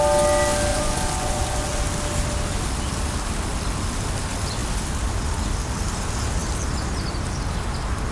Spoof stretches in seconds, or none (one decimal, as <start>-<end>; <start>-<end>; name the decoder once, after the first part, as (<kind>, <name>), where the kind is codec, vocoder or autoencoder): 0.7-1.8 (vocoder, Vocos)